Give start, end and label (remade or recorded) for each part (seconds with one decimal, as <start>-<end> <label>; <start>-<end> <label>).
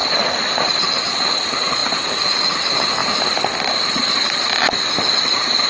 0.0-5.7 recorded